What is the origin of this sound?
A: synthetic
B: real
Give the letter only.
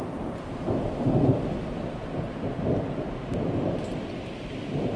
A